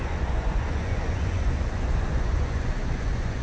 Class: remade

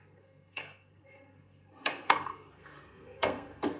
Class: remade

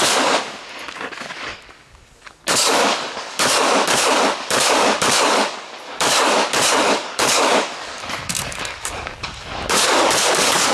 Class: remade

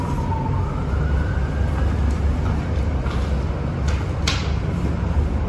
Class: recorded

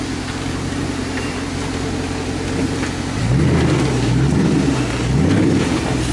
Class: recorded